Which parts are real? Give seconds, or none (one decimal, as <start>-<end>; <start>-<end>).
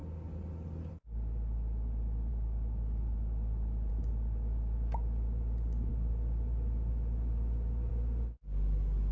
0.0-9.1